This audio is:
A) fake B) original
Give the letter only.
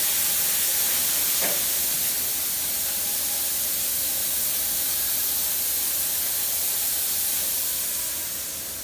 B